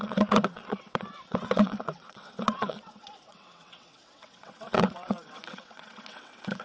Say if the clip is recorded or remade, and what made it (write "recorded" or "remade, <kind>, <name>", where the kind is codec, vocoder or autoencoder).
remade, vocoder, WaveNeXt